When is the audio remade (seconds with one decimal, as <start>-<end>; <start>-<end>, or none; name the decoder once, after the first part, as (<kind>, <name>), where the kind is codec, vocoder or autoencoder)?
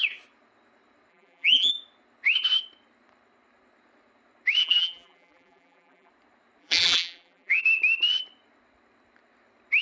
1.1-1.7 (vocoder, BigVGAN v2); 4.6-6.1; 6.6-7.6